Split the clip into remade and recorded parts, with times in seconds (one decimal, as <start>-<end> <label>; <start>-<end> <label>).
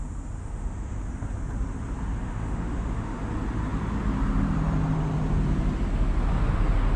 0.0-0.4 recorded; 0.4-1.0 remade; 1.0-2.2 recorded; 2.2-3.2 remade; 3.2-7.0 recorded